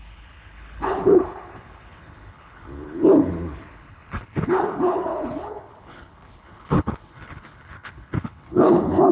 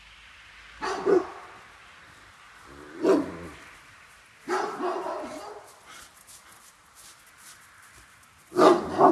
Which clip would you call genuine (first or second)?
second